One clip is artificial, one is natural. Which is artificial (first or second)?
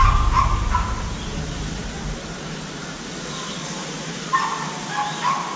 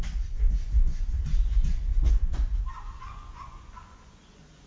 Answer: second